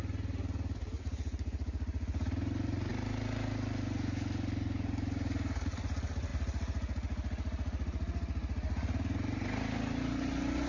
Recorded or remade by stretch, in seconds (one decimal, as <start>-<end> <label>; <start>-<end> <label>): 0.0-10.7 recorded